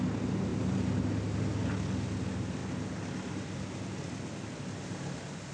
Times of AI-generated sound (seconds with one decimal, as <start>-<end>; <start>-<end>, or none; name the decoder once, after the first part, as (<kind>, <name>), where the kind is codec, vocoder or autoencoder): none